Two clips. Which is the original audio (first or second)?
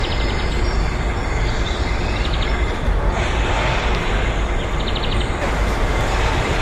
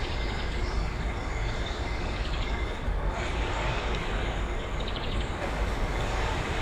first